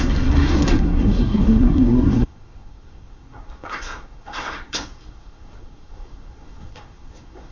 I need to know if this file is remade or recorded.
remade